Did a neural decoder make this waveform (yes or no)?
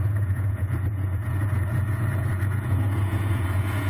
yes